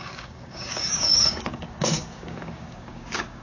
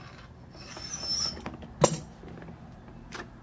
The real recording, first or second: second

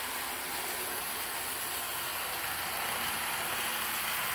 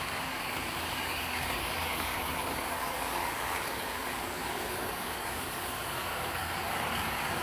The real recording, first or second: first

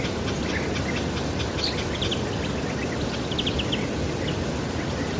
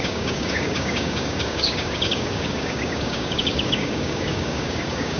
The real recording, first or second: first